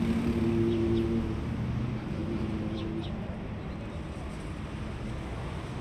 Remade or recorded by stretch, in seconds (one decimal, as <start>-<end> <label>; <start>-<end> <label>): 0.0-5.8 recorded